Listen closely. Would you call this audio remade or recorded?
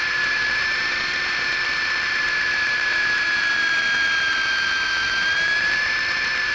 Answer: remade